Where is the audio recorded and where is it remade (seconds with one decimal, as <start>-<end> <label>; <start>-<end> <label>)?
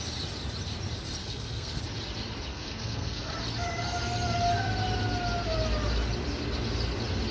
0.0-1.2 recorded; 1.2-1.8 remade; 1.8-2.5 recorded; 2.5-3.3 remade; 3.3-7.3 recorded